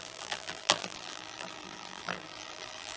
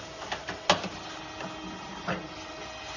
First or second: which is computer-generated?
first